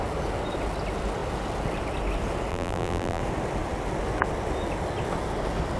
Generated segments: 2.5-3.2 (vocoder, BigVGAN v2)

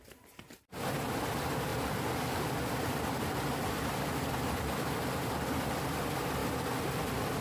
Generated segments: none

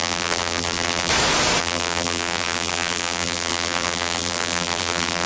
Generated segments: 0.0-1.1 (vocoder, BigVGAN v2); 1.6-5.3